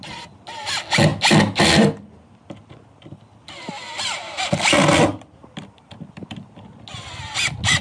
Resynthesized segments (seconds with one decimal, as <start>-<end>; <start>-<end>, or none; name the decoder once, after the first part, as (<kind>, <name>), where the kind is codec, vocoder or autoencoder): none